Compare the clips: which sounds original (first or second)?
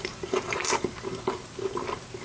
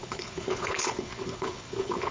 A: first